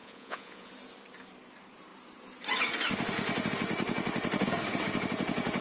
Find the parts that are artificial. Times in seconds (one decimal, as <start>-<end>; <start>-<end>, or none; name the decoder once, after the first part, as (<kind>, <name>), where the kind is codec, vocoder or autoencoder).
0.0-0.7 (vocoder, Vocos)

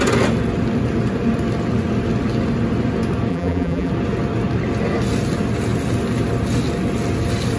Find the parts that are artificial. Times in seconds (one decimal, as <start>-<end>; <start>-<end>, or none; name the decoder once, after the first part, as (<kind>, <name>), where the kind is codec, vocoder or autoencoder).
3.3-3.9 (vocoder, BigVGAN v2)